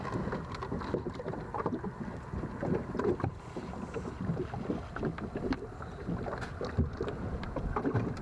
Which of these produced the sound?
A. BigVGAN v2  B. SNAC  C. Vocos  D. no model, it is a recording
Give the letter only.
D